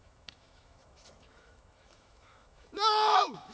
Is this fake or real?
fake